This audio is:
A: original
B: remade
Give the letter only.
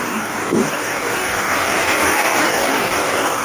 B